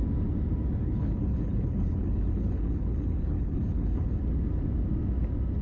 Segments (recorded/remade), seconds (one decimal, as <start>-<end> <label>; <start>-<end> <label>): 0.0-0.8 recorded; 0.8-4.2 remade; 4.2-5.6 recorded